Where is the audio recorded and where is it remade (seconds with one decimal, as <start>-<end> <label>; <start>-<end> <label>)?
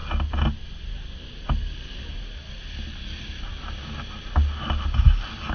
0.0-5.5 recorded